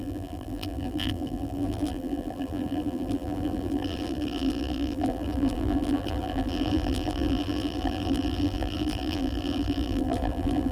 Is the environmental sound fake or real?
fake